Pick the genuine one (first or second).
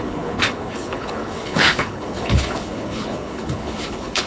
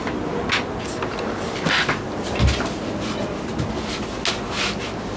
second